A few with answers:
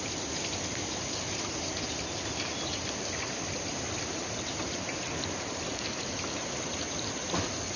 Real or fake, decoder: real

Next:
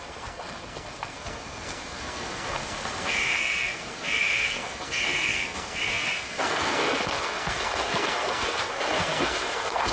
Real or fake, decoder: fake, codec, SNAC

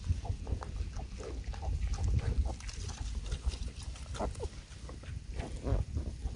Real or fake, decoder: real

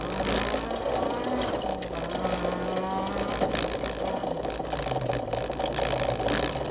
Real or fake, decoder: real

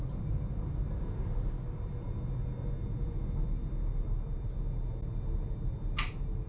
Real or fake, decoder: real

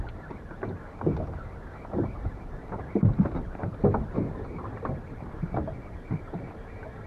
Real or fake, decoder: real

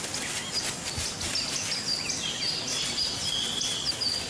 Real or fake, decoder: real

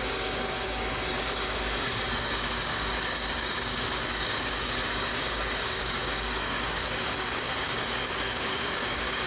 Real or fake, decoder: fake, codec, DAC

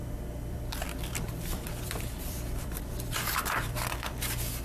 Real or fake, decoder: fake, vocoder, BigVGAN v2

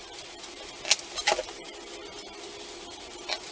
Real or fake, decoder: real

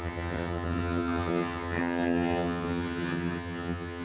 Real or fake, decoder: fake, vocoder, HiFi-GAN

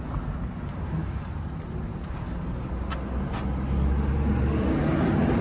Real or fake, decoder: real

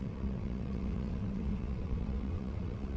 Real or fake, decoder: fake, vocoder, WaveNeXt